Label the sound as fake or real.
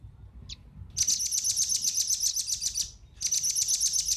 real